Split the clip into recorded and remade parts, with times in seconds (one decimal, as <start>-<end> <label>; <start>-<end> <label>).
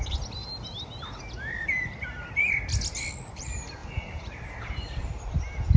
0.0-5.8 recorded